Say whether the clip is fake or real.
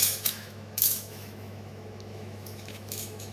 fake